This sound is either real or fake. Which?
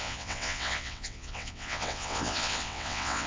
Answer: fake